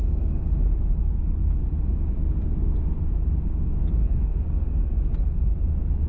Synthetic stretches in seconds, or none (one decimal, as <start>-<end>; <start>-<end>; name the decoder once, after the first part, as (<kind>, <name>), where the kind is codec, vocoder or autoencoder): 4.0-4.9 (codec, SNAC)